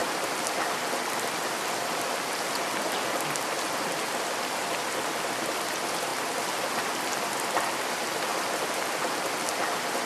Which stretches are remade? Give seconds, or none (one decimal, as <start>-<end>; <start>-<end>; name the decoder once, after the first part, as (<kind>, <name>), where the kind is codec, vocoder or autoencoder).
none